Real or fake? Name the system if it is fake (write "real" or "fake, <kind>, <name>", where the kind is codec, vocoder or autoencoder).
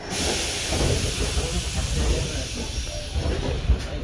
real